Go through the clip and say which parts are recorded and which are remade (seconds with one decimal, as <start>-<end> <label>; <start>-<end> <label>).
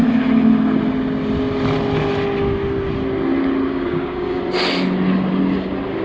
0.0-3.7 recorded; 3.7-4.4 remade; 4.4-6.0 recorded